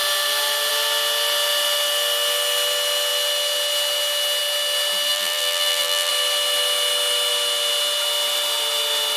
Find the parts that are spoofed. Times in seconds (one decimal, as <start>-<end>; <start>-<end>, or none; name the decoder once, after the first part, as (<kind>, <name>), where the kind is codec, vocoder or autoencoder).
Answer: 5.1-6.1 (vocoder, BigVGAN v2)